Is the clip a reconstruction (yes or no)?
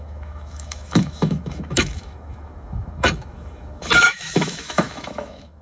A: yes